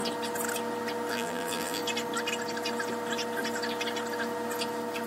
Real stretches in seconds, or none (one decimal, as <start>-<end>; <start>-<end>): 0.0-1.1; 1.8-5.1